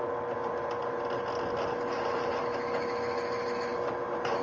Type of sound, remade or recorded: recorded